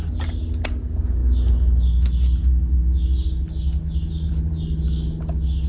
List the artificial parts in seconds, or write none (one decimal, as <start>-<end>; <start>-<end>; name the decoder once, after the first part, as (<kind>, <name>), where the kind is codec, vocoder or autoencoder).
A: none